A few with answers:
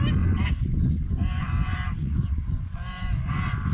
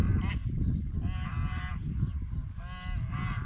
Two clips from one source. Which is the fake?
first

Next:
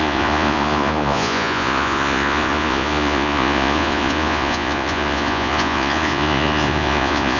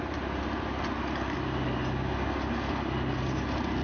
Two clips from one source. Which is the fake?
first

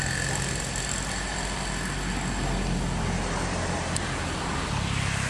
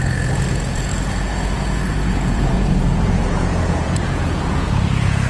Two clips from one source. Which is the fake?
second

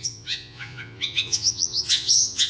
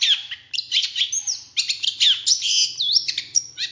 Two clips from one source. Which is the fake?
first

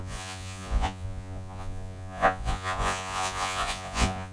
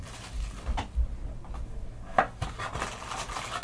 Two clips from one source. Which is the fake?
first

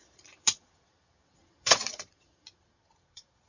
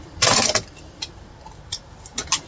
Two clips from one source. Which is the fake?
first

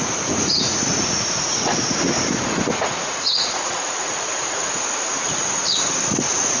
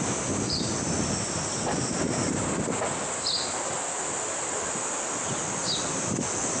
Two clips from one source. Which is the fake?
first